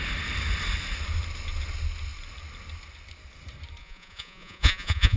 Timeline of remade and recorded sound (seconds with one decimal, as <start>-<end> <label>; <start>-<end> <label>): 0.0-3.8 recorded; 3.8-5.2 remade